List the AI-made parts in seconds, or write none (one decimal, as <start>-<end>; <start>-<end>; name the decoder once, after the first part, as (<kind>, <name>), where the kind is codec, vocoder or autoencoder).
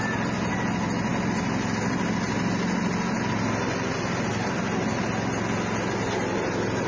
none